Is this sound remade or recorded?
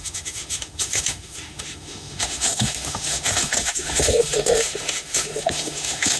remade